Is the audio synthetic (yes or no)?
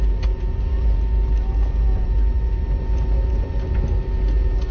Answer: no